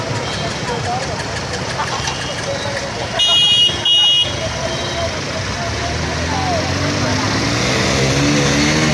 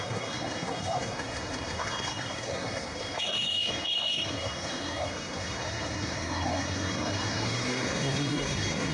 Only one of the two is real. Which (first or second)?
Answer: first